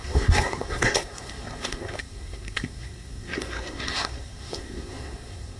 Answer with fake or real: fake